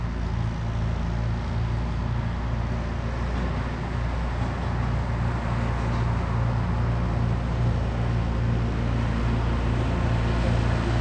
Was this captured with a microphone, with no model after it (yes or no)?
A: yes